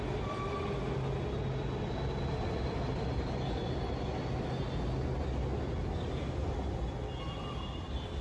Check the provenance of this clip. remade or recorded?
recorded